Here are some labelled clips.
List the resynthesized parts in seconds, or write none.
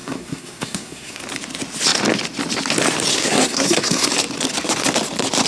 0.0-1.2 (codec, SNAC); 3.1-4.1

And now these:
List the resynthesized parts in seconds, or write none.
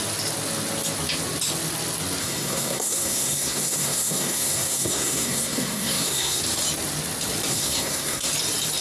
2.2-6.4 (codec, SNAC); 7.5-8.3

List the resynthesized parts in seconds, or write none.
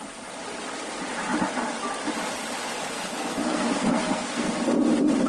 2.8-4.5 (codec, SNAC)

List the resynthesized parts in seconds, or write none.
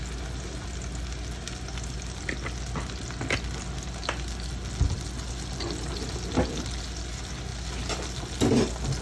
none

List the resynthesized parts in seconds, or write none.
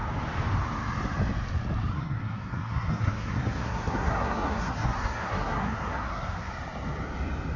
1.9-6.5 (codec, SNAC)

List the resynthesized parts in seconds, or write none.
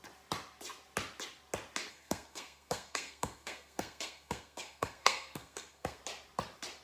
1.9-6.0 (codec, SNAC)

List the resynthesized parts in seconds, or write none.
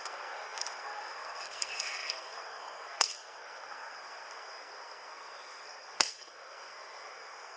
0.0-7.6 (codec, SNAC)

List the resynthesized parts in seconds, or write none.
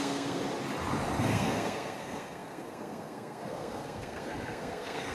0.0-0.4 (codec, SNAC); 1.2-5.1